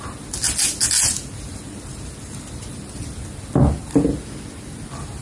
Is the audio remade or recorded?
recorded